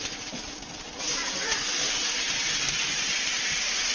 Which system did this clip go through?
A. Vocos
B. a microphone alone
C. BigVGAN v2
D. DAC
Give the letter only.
C